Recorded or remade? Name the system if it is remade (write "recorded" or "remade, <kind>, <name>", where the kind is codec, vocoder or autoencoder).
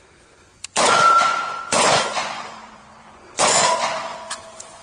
remade, vocoder, Vocos